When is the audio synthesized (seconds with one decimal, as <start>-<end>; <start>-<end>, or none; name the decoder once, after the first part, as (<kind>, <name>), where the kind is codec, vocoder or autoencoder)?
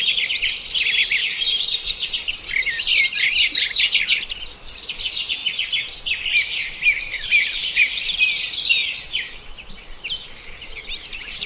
1.2-2.1 (vocoder, BigVGAN v2); 5.4-6.0